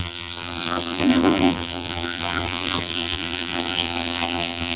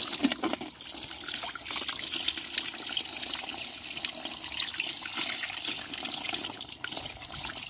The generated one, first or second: first